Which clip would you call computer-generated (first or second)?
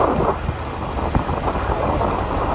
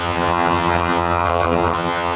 second